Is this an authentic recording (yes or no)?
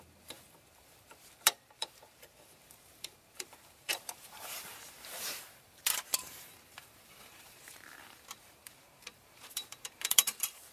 no